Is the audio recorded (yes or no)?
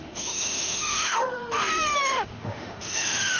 no